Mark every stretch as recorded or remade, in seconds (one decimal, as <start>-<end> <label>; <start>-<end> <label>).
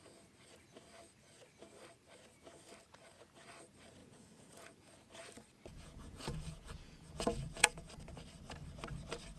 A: 0.0-4.0 recorded; 4.0-4.9 remade; 4.9-5.7 recorded; 5.7-7.9 remade; 7.9-9.4 recorded